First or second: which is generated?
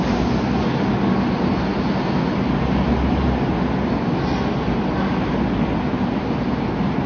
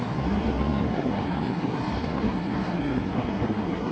second